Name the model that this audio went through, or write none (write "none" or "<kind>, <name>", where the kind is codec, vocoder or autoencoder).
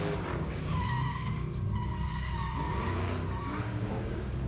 codec, DAC